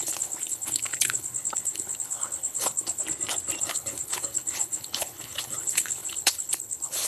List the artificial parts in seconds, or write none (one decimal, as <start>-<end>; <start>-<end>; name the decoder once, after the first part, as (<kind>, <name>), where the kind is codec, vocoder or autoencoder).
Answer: 0.0-3.0 (codec, HILCodec); 3.6-7.1